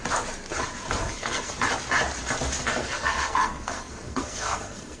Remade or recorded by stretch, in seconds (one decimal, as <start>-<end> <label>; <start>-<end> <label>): 0.0-1.0 recorded; 1.0-1.5 remade; 1.5-2.6 recorded; 2.6-5.0 remade